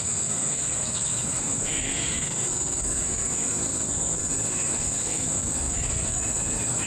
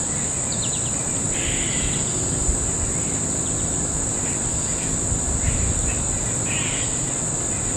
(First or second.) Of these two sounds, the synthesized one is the first